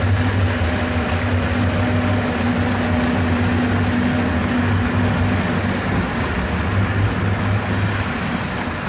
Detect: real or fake real